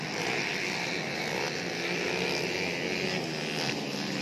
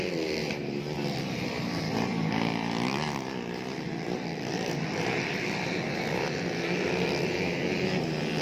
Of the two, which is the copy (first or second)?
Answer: second